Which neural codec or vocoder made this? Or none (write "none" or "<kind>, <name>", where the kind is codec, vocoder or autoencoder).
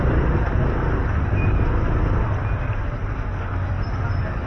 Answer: none